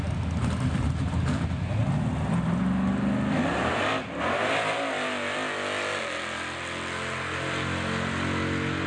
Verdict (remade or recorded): recorded